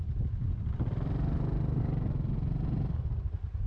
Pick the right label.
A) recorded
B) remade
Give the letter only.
A